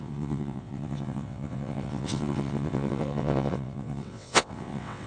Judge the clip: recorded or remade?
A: remade